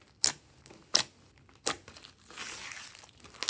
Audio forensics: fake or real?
real